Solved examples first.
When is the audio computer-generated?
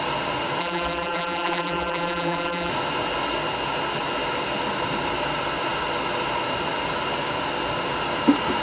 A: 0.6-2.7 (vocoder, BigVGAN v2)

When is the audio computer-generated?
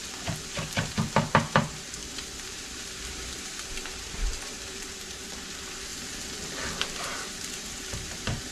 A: 1.4-5.9 (vocoder, BigVGAN v2); 6.8-8.5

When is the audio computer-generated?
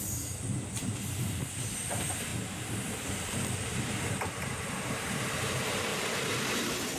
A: 0.0-5.9 (vocoder, BigVGAN v2)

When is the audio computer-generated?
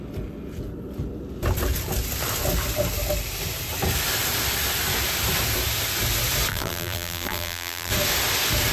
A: 6.5-7.9 (vocoder, BigVGAN v2)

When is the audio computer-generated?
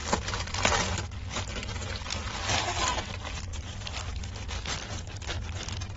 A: none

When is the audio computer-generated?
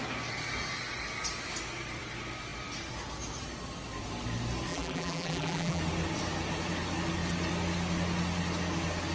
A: 4.7-5.8 (vocoder, BigVGAN v2)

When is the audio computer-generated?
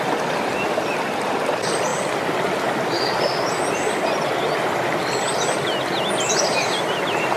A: 0.0-1.9 (vocoder, BigVGAN v2); 6.3-7.4